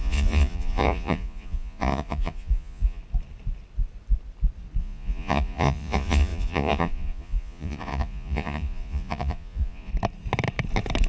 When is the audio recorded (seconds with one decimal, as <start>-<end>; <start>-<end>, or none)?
3.0-4.8; 9.9-11.1